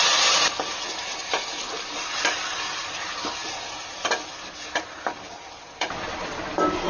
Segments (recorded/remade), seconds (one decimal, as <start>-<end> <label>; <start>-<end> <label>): 0.0-6.9 recorded